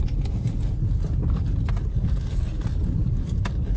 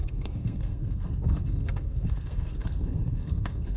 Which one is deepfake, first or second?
second